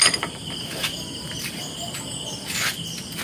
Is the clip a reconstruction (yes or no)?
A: no